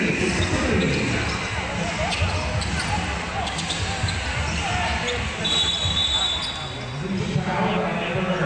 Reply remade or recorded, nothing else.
recorded